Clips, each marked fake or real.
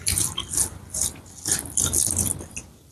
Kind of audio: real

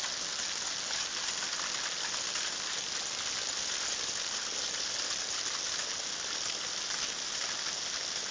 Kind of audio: real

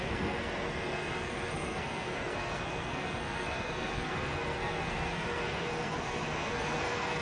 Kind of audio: fake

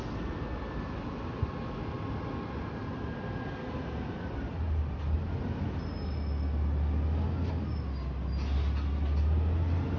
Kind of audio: real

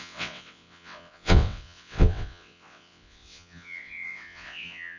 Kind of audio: fake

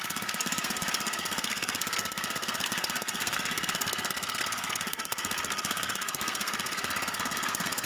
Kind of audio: fake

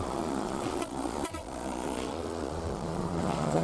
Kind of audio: fake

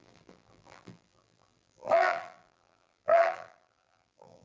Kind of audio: fake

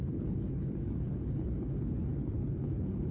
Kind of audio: fake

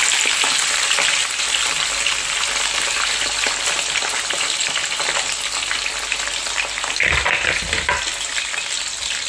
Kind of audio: real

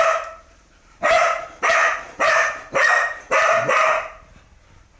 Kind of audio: fake